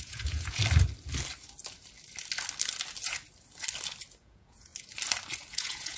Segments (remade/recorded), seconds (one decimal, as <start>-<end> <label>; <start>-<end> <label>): 0.0-0.6 remade; 0.6-4.2 recorded; 4.2-4.7 remade; 4.7-5.5 recorded; 5.5-6.0 remade